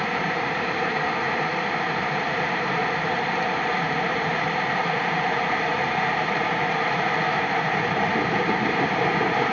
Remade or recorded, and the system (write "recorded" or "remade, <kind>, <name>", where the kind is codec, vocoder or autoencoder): remade, vocoder, BigVGAN v2